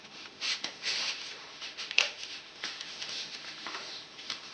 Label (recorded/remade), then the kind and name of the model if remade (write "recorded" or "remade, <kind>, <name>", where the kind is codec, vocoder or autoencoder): remade, autoencoder, DAC-VAE